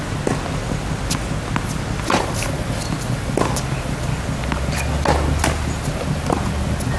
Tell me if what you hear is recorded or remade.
recorded